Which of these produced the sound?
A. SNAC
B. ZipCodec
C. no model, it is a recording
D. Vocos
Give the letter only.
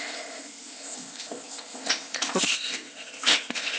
B